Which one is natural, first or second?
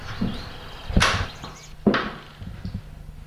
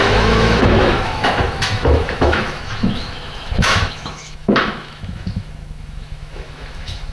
first